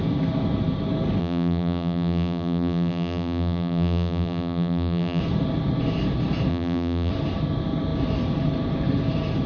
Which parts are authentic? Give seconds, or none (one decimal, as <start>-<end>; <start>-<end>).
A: 0.0-1.2; 5.2-6.5; 7.1-9.5